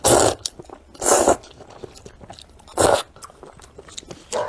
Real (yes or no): yes